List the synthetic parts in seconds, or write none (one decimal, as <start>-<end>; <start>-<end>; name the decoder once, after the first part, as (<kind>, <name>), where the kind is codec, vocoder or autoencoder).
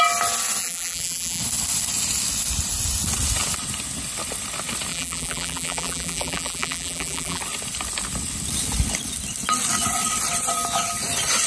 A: 0.6-1.4 (vocoder, BigVGAN v2); 4.9-7.4